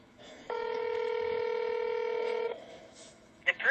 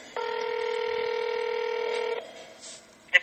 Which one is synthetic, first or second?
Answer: first